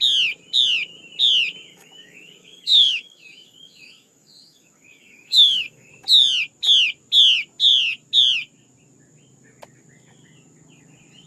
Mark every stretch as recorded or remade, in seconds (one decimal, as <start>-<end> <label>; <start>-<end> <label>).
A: 0.0-1.7 recorded; 1.7-5.9 remade; 5.9-11.3 recorded